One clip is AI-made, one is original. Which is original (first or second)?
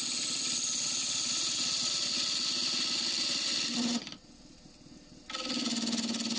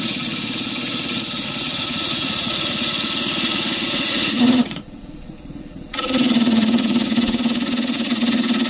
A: first